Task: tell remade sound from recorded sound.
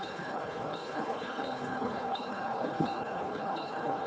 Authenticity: remade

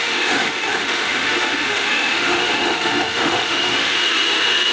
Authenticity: remade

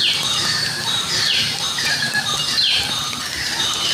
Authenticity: remade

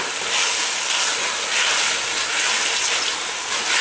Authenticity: recorded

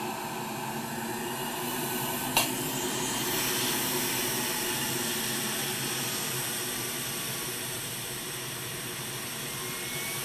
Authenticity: recorded